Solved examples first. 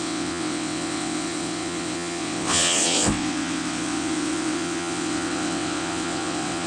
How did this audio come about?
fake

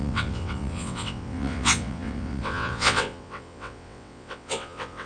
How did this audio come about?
fake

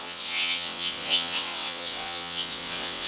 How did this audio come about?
fake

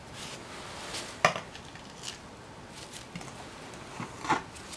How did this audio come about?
real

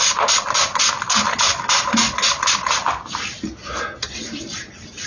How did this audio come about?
real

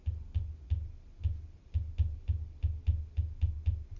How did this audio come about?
real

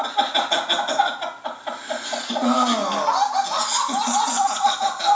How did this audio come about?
real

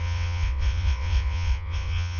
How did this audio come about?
fake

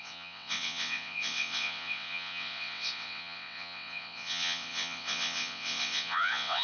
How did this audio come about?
fake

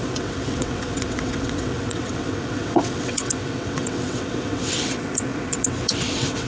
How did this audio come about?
fake